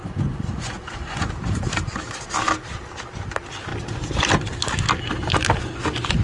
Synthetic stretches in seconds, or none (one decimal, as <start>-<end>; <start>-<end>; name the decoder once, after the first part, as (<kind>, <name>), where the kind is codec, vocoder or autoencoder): 0.0-1.3 (vocoder, Vocos)